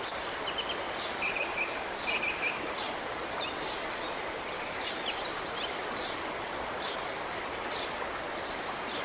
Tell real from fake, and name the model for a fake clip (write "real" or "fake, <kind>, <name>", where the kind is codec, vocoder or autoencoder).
real